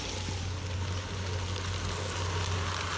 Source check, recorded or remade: recorded